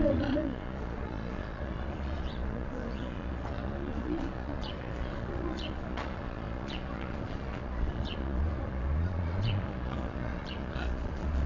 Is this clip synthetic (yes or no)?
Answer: yes